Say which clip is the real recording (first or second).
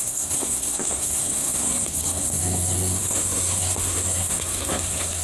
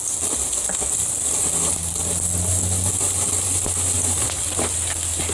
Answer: second